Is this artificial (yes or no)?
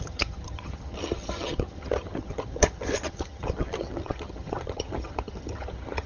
yes